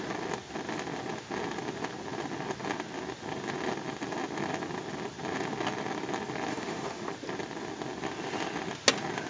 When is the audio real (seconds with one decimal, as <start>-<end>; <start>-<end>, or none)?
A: 0.0-6.5; 7.0-9.3